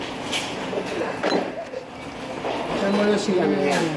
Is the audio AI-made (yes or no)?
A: no